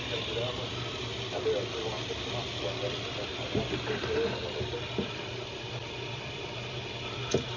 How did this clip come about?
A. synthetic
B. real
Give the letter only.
B